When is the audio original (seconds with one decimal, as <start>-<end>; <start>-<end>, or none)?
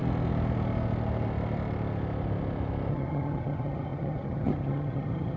0.0-2.9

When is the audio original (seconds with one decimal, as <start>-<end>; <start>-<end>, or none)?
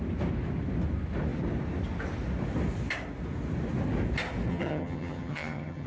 0.0-4.5